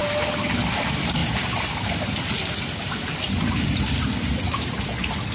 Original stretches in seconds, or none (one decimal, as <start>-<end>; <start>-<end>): 0.0-1.2; 4.4-5.3